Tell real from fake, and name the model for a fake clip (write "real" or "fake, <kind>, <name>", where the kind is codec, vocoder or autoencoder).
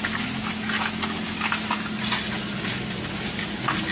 real